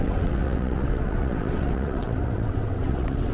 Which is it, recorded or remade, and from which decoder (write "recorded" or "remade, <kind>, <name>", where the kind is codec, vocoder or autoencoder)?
remade, vocoder, WaveNeXt